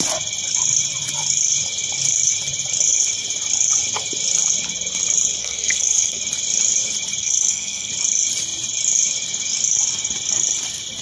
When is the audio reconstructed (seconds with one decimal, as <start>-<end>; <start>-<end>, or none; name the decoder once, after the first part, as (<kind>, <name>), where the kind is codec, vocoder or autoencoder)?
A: 5.4-6.2 (codec, SNAC); 7.2-7.9